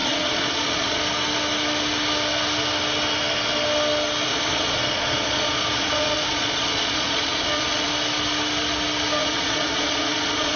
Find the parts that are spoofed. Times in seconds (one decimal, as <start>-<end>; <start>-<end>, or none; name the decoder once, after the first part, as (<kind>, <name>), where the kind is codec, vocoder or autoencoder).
0.0-1.0 (vocoder, Vocos); 4.3-7.9; 9.2-10.6

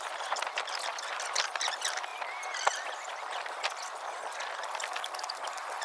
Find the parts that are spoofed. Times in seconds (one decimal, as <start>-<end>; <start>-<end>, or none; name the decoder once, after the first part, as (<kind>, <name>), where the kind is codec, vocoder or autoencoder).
2.1-3.1 (vocoder, BigVGAN v2)

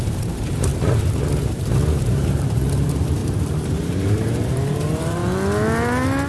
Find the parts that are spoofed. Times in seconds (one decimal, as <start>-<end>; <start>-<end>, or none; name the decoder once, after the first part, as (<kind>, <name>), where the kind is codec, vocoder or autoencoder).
0.0-0.7 (vocoder, BigVGAN v2); 1.9-5.2